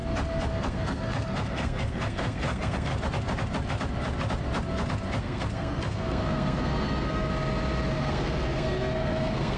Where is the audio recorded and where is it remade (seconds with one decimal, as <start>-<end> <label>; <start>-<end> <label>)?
0.0-0.5 recorded; 0.5-2.9 remade; 2.9-5.2 recorded; 5.2-7.3 remade; 7.3-7.9 recorded; 7.9-9.6 remade